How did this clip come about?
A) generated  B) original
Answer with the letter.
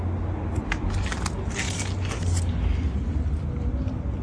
B